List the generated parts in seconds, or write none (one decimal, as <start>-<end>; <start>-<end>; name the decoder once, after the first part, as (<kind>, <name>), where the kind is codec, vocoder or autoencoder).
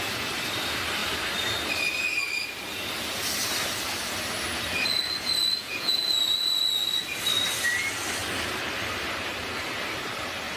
5.6-6.2 (vocoder, Vocos)